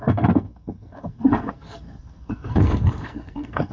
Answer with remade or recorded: remade